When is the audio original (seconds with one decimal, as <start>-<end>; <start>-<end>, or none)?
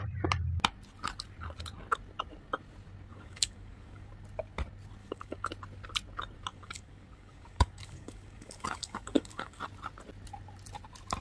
0.0-3.1; 4.1-5.0; 5.5-6.5; 9.6-11.2